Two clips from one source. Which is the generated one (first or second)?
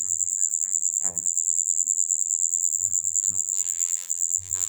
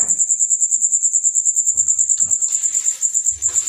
first